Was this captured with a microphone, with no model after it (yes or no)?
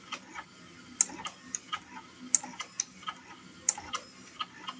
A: yes